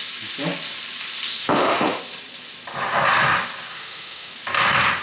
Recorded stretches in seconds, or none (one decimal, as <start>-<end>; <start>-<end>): 0.0-1.4; 2.0-3.7; 4.3-5.0